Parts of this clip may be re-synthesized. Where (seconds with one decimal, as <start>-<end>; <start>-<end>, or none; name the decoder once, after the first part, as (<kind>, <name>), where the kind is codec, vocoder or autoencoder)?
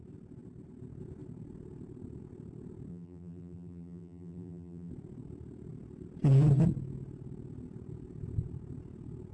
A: 2.9-4.9 (vocoder, BigVGAN v2)